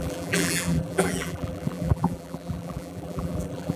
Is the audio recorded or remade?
remade